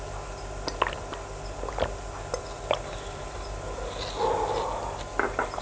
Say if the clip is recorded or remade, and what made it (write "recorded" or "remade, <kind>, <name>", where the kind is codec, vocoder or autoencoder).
recorded